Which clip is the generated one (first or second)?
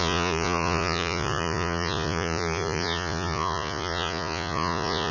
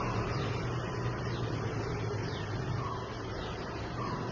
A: first